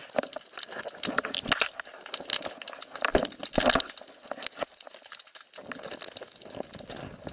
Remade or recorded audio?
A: recorded